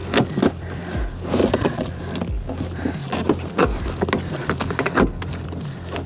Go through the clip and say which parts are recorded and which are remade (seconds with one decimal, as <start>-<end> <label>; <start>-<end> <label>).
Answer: 0.0-1.4 recorded; 1.4-2.0 remade; 2.0-6.1 recorded